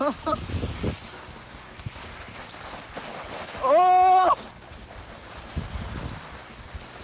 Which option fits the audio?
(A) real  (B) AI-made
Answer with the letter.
A